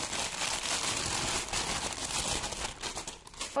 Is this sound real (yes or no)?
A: yes